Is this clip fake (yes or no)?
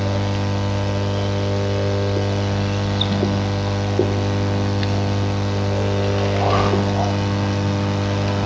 no